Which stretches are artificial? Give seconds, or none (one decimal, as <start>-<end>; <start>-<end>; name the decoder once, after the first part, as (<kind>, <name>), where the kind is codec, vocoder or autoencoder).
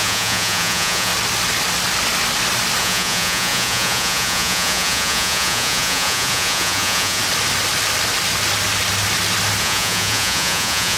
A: 0.0-1.1 (vocoder, Vocos); 2.8-7.2; 9.6-11.0